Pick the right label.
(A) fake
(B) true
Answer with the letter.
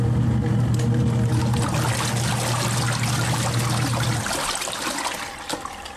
B